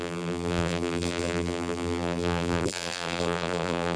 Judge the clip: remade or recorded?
remade